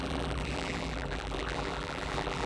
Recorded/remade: remade